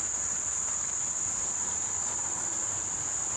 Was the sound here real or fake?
real